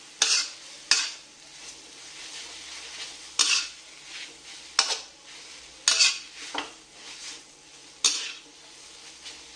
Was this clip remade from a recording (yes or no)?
no